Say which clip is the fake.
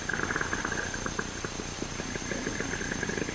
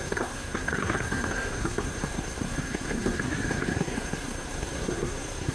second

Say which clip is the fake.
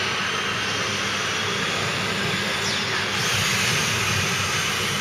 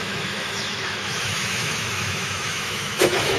second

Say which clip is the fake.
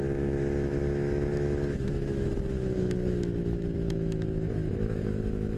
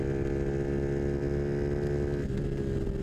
first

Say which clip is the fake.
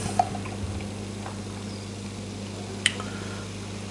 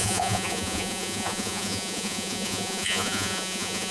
second